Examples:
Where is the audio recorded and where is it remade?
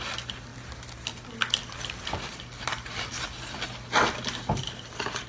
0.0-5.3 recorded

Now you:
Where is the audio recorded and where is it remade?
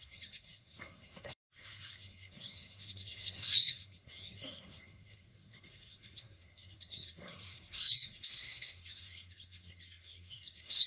0.0-10.9 remade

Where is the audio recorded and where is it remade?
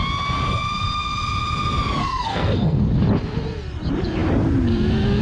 0.0-2.0 recorded; 2.0-2.8 remade; 2.8-5.2 recorded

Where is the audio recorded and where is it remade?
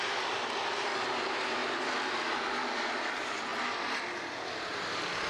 0.0-1.6 remade; 1.6-2.5 recorded; 2.5-5.3 remade